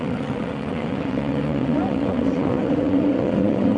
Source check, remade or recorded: remade